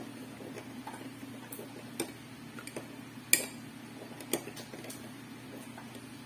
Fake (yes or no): no